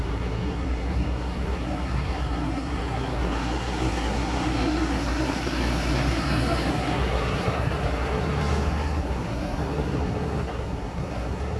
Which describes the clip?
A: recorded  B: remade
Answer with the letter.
B